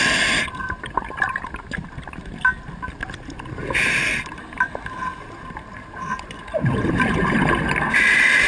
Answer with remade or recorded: recorded